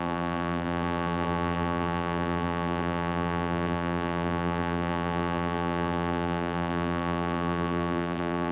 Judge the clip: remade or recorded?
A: remade